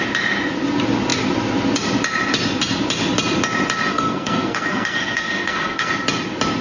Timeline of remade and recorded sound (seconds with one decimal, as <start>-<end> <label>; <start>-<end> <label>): 0.0-3.9 recorded; 3.9-5.9 remade; 5.9-6.6 recorded